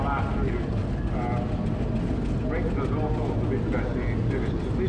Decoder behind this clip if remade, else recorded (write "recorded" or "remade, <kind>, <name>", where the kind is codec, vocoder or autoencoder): recorded